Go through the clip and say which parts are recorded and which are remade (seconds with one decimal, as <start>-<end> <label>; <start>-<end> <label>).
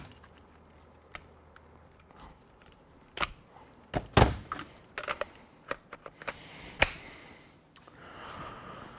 0.0-9.0 recorded